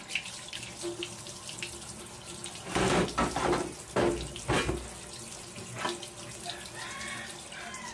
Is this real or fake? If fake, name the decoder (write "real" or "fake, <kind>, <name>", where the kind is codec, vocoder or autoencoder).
real